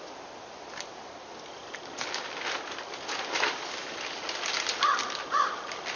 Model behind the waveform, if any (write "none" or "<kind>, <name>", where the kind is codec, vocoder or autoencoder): none